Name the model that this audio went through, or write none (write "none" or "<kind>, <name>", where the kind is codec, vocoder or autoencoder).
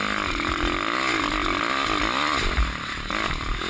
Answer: none